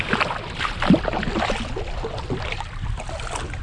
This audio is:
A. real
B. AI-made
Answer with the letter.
A